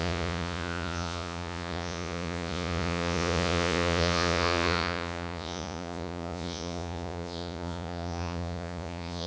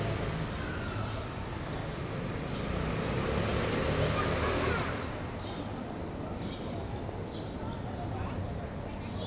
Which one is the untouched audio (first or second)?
second